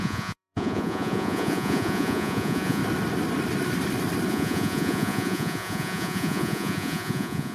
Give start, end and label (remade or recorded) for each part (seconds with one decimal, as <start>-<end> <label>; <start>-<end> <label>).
0.0-2.8 remade; 2.8-4.3 recorded; 4.3-7.5 remade